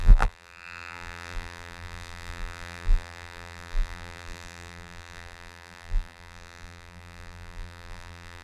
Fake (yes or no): yes